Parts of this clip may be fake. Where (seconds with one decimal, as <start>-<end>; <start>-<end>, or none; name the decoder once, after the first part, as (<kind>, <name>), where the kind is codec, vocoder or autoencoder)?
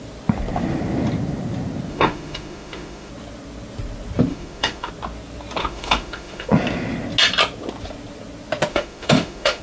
1.9-3.1 (autoencoder, DAC-VAE); 4.3-4.9; 5.6-6.5; 8.7-9.6